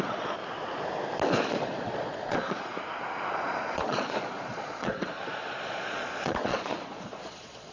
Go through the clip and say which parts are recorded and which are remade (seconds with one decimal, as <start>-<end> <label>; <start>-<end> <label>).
0.0-0.4 remade; 0.4-1.5 recorded; 1.5-2.7 remade; 2.7-3.3 recorded; 3.3-7.7 remade